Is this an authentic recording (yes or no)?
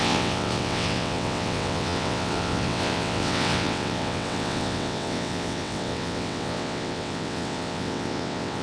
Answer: no